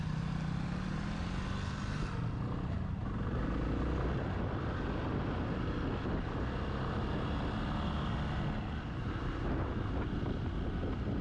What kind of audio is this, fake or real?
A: real